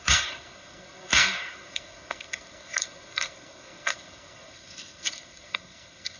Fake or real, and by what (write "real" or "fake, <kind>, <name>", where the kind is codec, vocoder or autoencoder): fake, codec, SNAC